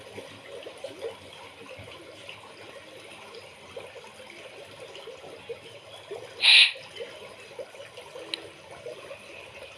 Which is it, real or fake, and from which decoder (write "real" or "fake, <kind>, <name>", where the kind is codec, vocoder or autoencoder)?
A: real